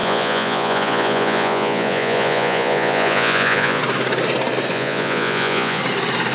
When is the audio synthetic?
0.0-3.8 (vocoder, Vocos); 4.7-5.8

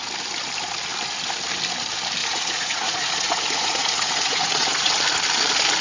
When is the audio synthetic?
2.2-4.9 (vocoder, Vocos)